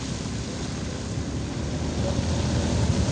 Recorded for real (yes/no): yes